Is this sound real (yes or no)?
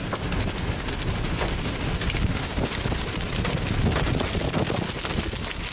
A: yes